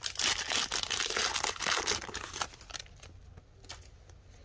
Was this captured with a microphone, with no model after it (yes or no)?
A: yes